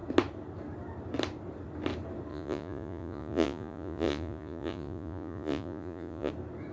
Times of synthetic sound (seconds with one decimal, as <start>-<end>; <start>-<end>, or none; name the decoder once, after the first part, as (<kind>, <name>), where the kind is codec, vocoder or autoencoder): 2.3-6.3 (vocoder, Vocos)